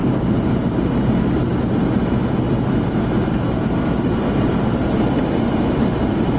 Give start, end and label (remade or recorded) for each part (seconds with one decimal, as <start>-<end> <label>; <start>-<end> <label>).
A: 0.0-6.4 recorded